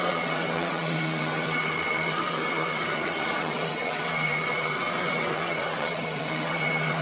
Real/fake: fake